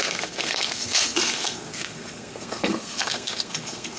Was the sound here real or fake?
fake